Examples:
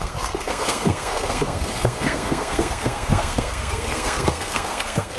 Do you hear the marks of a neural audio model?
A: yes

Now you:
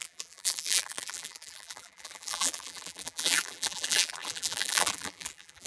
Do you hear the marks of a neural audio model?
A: yes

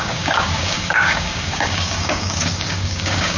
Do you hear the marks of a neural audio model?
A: yes